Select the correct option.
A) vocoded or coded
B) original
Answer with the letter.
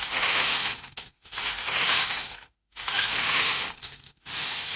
A